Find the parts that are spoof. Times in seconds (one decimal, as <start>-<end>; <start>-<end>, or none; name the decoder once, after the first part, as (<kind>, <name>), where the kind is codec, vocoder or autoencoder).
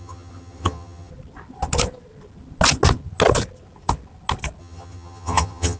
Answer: 0.0-1.1 (vocoder, HiFi-GAN); 4.6-5.8